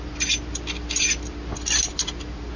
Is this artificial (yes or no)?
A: no